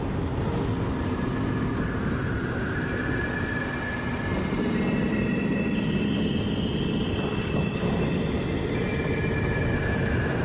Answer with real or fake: real